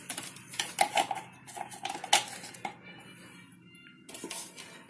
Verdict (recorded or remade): recorded